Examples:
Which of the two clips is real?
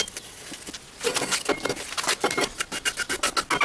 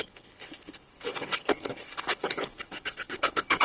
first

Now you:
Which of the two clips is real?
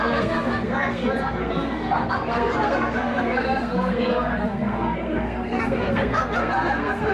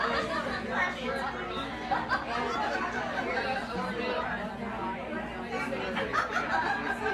second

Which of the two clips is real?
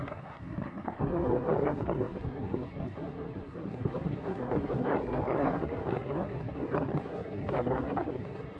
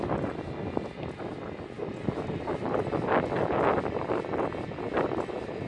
second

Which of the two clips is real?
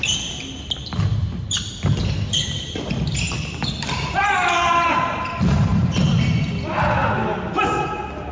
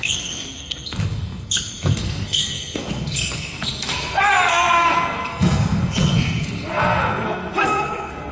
first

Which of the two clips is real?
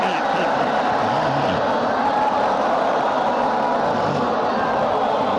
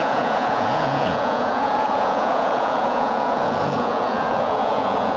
first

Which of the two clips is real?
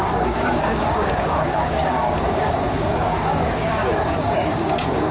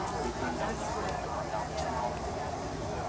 second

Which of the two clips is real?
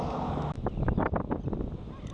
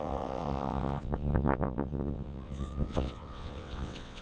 first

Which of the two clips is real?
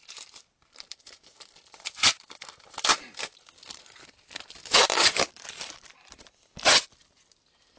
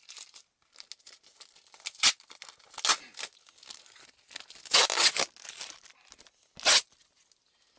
second